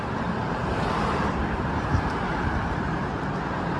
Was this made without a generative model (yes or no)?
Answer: no